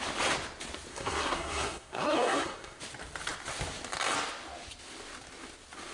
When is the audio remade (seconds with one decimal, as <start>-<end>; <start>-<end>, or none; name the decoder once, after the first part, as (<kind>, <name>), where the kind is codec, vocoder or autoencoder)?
0.9-2.8 (codec, SNAC)